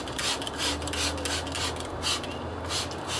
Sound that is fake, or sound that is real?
real